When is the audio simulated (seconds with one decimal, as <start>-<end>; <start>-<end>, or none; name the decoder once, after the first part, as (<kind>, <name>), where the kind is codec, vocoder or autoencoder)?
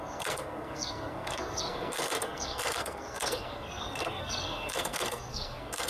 0.0-5.9 (codec, SNAC)